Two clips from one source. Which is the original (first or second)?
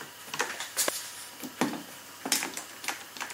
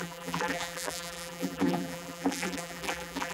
first